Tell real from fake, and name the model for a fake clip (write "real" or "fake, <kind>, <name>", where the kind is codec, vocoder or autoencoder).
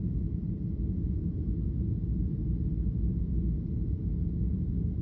real